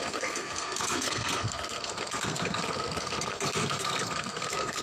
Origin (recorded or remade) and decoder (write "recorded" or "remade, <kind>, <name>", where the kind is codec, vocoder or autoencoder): remade, codec, SNAC